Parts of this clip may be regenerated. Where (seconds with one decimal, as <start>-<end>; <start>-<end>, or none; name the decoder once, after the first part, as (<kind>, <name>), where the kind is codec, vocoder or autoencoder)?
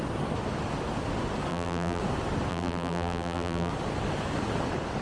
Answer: 1.5-2.0 (vocoder, BigVGAN v2); 2.5-3.7